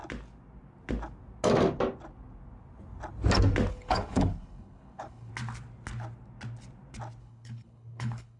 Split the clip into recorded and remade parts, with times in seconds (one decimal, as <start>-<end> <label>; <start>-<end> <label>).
0.0-3.7 recorded; 3.7-5.3 remade; 5.3-7.2 recorded; 7.2-8.4 remade